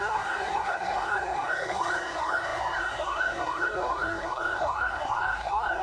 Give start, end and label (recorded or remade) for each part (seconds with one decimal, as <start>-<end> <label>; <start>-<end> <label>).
0.0-5.8 remade